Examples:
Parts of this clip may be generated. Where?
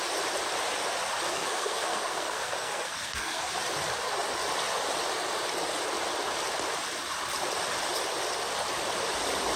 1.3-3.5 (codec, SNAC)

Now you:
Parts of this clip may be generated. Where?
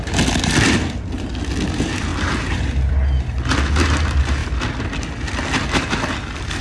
none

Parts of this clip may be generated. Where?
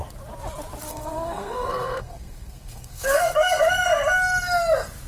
0.9-3.7 (codec, SNAC)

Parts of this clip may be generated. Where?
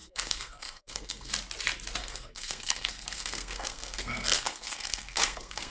0.0-1.3 (codec, SNAC); 2.0-5.7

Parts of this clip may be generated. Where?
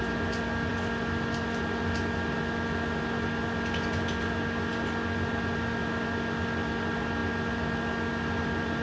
none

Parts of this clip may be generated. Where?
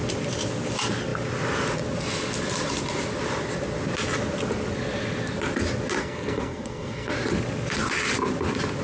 6.0-7.1 (codec, SNAC)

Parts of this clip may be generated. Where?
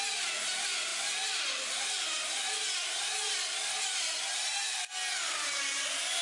none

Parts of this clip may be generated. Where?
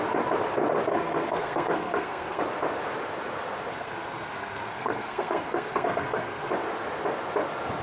0.9-2.4 (codec, SNAC); 3.7-6.5